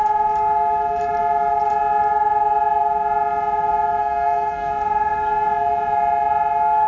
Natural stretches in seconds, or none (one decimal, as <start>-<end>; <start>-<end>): 0.0-4.0; 4.7-6.9